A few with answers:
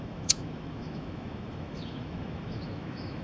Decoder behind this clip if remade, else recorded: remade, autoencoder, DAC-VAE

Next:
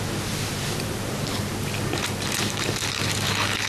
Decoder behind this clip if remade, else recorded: recorded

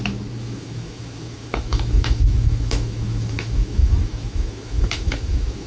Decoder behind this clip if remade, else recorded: remade, autoencoder, DAC-VAE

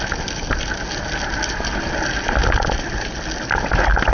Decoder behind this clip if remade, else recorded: recorded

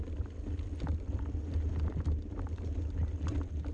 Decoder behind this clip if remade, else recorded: recorded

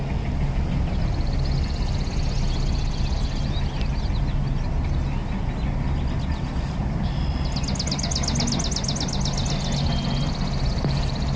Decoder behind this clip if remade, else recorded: recorded